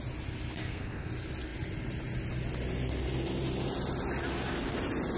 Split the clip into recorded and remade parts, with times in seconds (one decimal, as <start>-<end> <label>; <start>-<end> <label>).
0.0-0.6 recorded; 0.6-1.1 remade; 1.1-5.2 recorded